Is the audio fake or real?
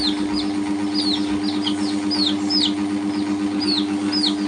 real